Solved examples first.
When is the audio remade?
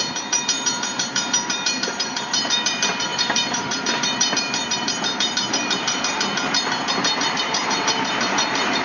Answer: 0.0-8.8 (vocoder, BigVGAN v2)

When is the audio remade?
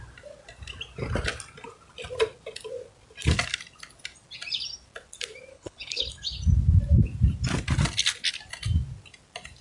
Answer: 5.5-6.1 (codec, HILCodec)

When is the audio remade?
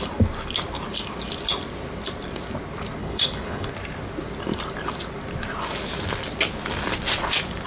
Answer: 3.0-3.7 (codec, HILCodec)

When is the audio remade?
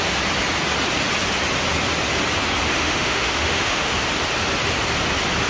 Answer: 2.7-3.9 (autoencoder, DAC-VAE)